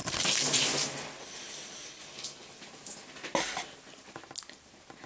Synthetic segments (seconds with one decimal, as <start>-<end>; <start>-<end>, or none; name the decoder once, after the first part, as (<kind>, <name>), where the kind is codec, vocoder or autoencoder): none